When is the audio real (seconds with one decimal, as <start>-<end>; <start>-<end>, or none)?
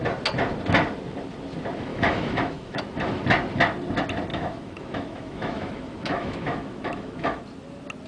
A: 0.0-1.9; 2.8-4.3; 7.4-8.1